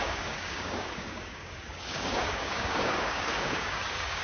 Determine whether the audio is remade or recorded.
remade